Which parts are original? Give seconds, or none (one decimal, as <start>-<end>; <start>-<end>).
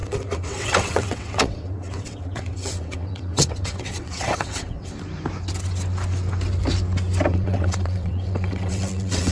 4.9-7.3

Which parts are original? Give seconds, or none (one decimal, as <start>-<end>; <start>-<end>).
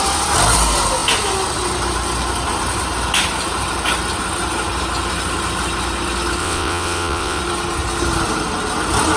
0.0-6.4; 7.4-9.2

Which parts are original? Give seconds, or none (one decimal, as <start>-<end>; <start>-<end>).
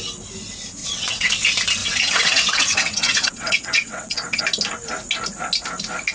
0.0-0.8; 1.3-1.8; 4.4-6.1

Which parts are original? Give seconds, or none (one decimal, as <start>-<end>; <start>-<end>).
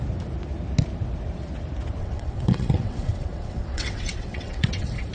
0.0-2.0